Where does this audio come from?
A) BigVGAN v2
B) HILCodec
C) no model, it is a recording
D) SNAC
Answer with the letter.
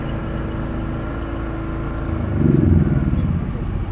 C